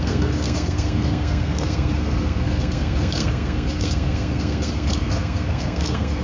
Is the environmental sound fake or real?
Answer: fake